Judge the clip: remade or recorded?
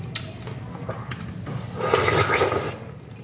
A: recorded